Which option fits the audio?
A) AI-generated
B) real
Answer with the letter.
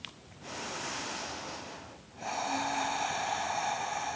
B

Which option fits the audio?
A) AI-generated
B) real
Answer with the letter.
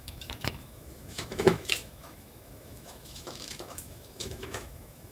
A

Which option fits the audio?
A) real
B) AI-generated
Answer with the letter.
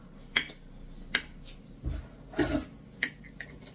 A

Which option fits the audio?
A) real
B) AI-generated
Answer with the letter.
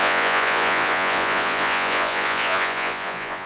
B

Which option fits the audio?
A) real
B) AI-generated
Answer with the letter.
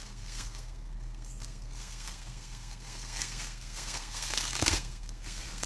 B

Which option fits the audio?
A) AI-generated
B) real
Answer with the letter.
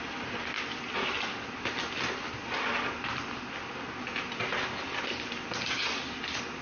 B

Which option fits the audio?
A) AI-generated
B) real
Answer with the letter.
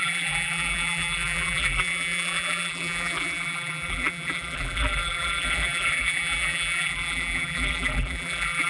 A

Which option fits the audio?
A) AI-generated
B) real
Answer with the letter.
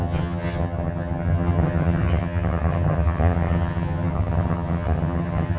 A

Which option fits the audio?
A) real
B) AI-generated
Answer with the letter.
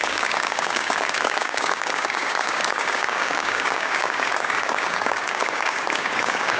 B